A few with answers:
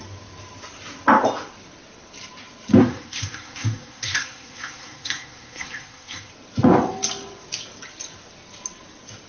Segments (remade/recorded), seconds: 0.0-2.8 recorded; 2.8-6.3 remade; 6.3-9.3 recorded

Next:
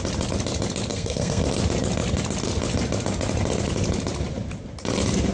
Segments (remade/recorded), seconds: 0.0-0.9 recorded; 0.9-1.4 remade; 1.4-5.3 recorded

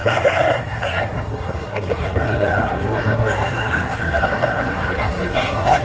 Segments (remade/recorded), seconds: 0.0-5.8 remade

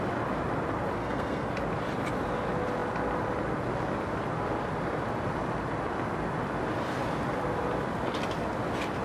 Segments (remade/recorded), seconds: 0.0-1.0 recorded; 1.0-1.5 remade; 1.5-9.0 recorded

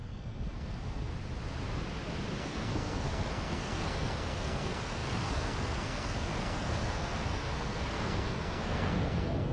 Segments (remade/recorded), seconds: 0.0-1.1 remade; 1.1-2.4 recorded; 2.4-9.5 remade

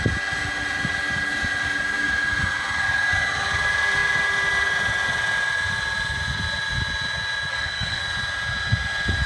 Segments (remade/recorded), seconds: 0.0-7.5 recorded; 7.5-8.0 remade; 8.0-9.3 recorded

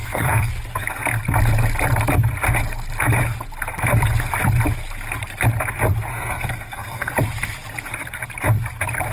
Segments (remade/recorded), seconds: 0.0-0.5 remade; 0.5-6.1 recorded; 6.1-7.1 remade; 7.1-9.1 recorded